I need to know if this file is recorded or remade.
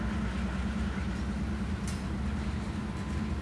recorded